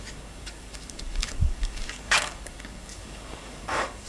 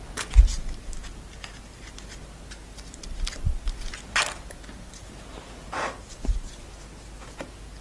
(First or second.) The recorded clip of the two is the second